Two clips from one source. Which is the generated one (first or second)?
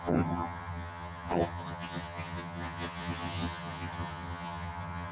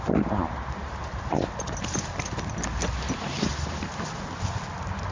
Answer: first